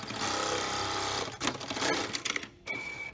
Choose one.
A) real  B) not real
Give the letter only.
A